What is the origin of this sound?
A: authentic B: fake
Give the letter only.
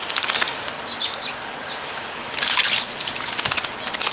A